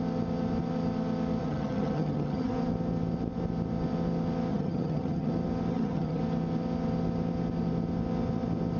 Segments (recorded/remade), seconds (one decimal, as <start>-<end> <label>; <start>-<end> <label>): 0.0-1.4 recorded; 1.4-2.5 remade; 2.5-4.5 recorded; 4.5-5.3 remade; 5.3-5.7 recorded; 5.7-6.2 remade; 6.2-8.8 recorded